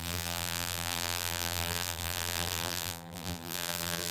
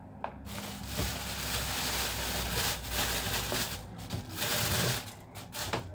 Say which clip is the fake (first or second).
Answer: first